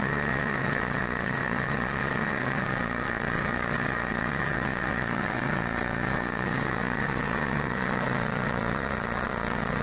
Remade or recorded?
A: remade